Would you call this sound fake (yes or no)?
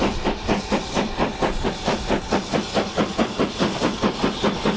no